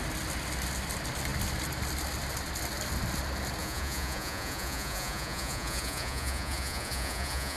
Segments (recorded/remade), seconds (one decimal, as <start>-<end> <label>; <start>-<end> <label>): 0.0-3.6 recorded; 3.6-7.6 remade